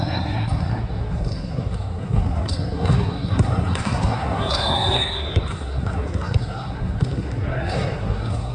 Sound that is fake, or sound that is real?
fake